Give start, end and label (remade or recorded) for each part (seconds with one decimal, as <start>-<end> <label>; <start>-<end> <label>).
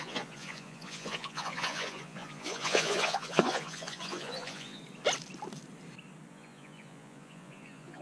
0.0-4.8 remade; 4.8-6.3 recorded; 6.3-8.0 remade